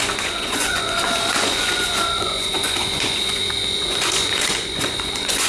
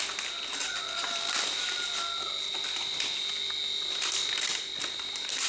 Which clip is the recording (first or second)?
second